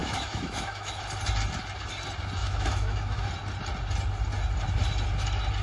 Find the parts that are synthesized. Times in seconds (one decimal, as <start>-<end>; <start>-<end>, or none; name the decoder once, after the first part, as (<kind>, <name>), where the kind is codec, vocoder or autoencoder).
0.0-1.0 (autoencoder, DAC-VAE); 2.4-3.3